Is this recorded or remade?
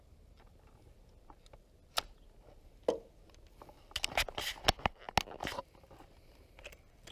recorded